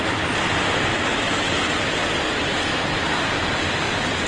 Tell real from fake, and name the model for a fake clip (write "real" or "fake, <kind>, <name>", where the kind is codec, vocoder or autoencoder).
real